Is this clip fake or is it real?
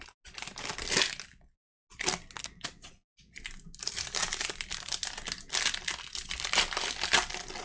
real